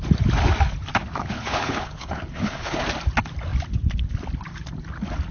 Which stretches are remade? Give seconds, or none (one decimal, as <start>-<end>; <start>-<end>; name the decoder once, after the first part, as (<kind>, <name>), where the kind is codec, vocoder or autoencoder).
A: 1.2-2.8 (codec, HILCodec)